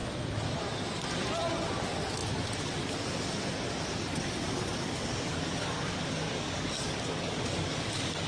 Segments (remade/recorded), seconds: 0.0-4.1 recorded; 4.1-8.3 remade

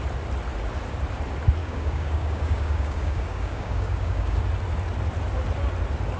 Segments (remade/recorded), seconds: 0.0-1.6 recorded; 1.6-4.4 remade; 4.4-6.2 recorded

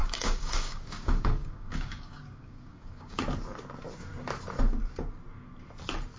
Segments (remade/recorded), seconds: 0.0-3.2 remade; 3.2-6.2 recorded

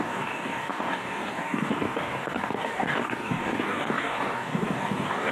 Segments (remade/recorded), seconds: 0.0-5.3 remade

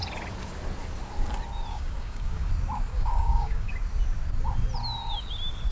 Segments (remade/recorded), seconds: 0.0-1.7 recorded; 1.7-2.5 remade; 2.5-2.9 recorded; 2.9-3.7 remade; 3.7-5.7 recorded

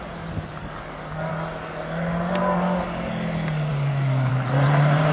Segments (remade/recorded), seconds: 0.0-0.6 recorded; 0.6-1.3 remade; 1.3-2.4 recorded; 2.4-3.1 remade; 3.1-3.7 recorded; 3.7-4.3 remade; 4.3-5.1 recorded